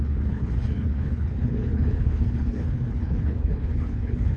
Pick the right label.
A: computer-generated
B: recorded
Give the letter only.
A